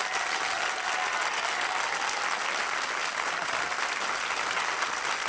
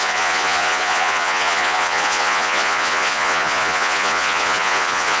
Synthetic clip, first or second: second